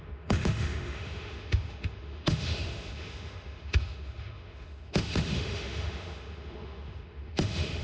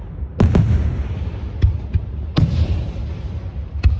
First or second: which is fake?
first